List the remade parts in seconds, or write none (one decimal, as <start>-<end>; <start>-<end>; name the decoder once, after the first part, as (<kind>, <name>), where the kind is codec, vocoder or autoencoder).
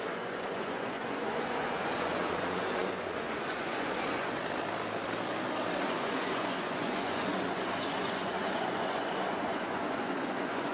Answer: 0.0-4.4 (vocoder, Vocos); 5.8-10.7